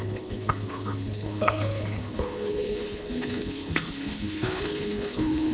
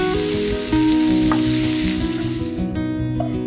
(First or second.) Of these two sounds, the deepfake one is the first